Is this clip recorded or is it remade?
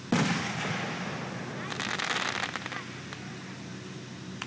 recorded